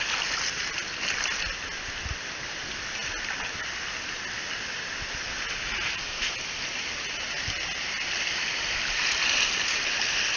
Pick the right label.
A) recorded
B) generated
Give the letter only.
A